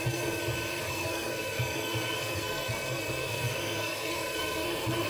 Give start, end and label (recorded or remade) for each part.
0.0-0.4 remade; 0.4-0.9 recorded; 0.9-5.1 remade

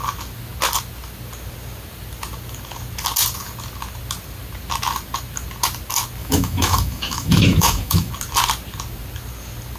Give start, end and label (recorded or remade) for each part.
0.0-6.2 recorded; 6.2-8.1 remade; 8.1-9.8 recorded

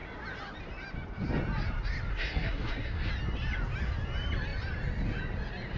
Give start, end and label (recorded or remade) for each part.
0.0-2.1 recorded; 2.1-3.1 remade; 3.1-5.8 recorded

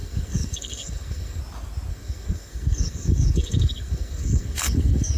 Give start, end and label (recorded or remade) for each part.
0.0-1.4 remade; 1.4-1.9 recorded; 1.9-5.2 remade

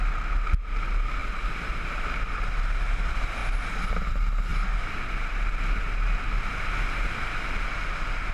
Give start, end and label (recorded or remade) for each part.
0.0-1.2 recorded; 1.2-2.4 remade; 2.4-3.4 recorded; 3.4-4.1 remade; 4.1-8.3 recorded

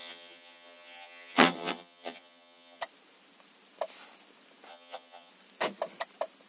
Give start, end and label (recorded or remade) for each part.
0.0-2.8 remade; 2.8-4.7 recorded; 4.7-5.3 remade; 5.3-6.5 recorded

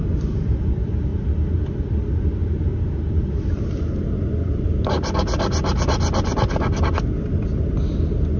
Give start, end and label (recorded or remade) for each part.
0.0-8.4 recorded